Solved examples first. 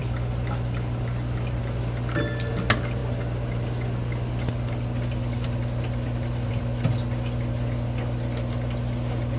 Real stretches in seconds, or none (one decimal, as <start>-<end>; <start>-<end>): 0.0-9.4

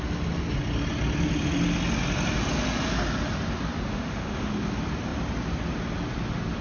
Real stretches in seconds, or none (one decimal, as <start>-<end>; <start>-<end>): 0.0-3.9; 4.5-6.6

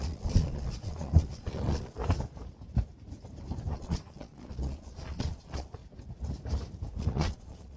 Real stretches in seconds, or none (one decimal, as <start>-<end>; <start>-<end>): 2.0-3.7; 5.8-7.0

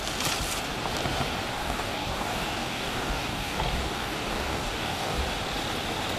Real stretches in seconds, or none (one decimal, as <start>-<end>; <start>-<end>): 0.0-1.5; 5.2-6.2

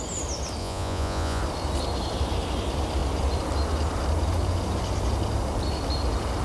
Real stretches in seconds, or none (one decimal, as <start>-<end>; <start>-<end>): 0.0-0.6; 1.4-6.4